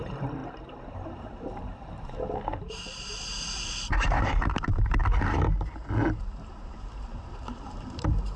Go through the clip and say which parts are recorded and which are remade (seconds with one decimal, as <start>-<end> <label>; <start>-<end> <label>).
0.0-0.4 remade; 0.4-0.9 recorded; 0.9-8.4 remade